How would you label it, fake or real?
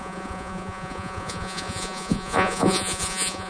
fake